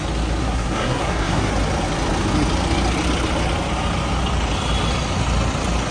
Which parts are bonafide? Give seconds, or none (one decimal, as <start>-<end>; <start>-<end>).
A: 0.0-0.4; 1.5-5.9